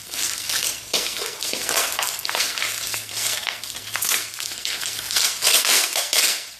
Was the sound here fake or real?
fake